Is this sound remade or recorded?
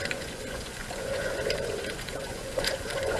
remade